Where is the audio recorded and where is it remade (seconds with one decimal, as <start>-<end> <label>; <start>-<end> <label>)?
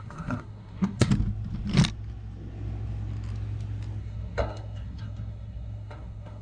0.0-1.1 remade; 1.1-4.0 recorded; 4.0-6.4 remade